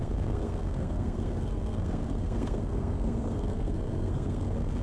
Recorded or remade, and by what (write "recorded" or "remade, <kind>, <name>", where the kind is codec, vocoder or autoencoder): remade, codec, SNAC